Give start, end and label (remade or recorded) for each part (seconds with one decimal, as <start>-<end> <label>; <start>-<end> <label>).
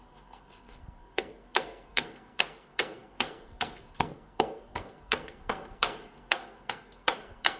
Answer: 0.0-7.6 remade